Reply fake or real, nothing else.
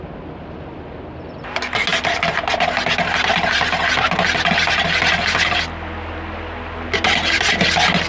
real